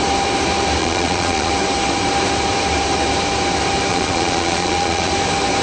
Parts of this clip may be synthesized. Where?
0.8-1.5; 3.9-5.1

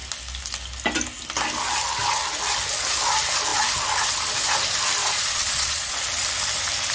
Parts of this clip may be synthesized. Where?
5.0-6.0

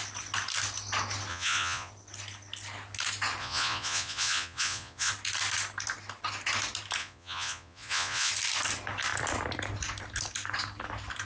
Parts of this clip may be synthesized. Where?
1.3-1.9; 3.4-5.1; 7.0-8.3

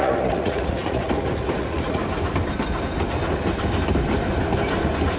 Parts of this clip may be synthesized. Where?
0.0-2.0